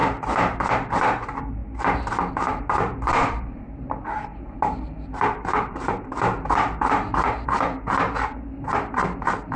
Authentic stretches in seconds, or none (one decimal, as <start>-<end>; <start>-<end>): 1.6-2.3